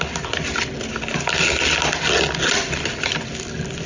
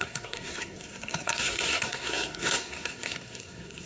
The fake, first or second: second